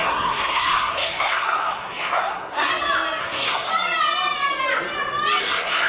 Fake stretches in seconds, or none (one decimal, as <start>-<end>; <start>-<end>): 0.0-2.7; 3.2-3.7; 5.4-5.9